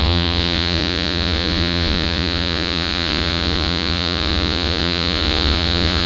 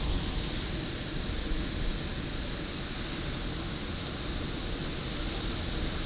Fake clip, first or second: first